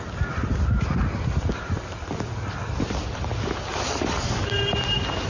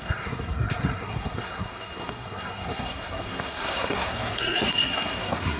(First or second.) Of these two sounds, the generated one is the second